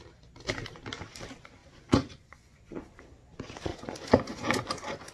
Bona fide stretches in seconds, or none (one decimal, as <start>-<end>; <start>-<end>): 0.0-1.6; 3.0-3.7